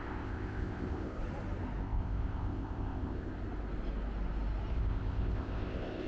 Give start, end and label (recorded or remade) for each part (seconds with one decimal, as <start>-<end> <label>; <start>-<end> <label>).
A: 0.0-1.2 remade; 1.2-1.8 recorded; 1.8-3.3 remade; 3.3-4.7 recorded; 4.7-6.1 remade